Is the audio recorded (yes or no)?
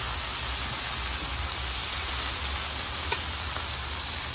yes